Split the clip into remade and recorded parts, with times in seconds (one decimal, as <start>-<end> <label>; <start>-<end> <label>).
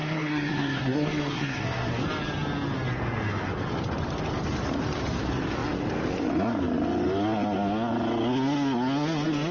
0.0-1.9 remade; 1.9-9.5 recorded